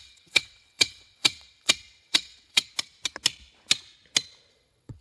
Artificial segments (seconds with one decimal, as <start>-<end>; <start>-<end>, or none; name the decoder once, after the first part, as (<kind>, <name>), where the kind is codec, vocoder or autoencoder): 0.0-2.7 (vocoder, WaveNeXt); 4.5-5.0